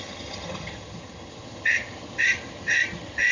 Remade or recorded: remade